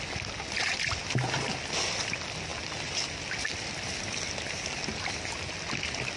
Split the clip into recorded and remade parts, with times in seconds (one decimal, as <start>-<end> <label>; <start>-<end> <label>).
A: 0.0-6.2 recorded